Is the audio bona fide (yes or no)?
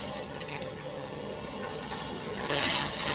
no